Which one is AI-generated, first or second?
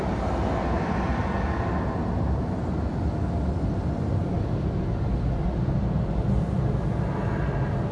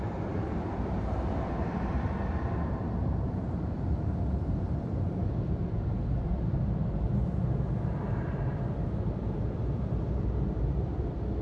second